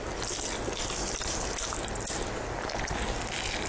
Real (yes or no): yes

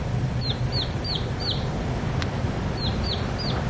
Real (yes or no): yes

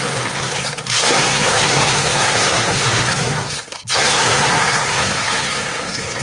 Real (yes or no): no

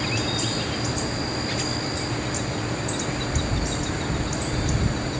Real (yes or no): yes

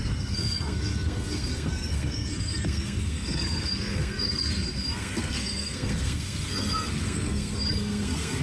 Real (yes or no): no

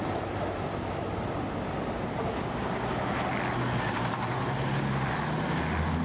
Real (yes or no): yes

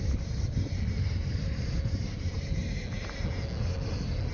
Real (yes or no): yes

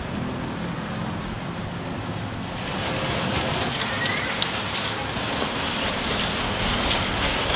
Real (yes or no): yes